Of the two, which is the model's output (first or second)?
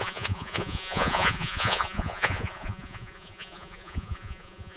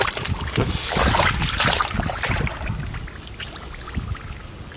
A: first